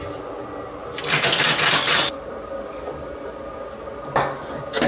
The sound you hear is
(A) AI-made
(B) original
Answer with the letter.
B